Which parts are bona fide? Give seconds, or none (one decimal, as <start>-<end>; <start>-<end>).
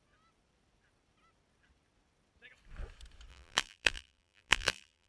0.0-3.3